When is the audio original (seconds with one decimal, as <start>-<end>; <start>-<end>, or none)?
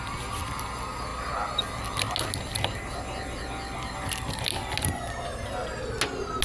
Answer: 0.0-6.4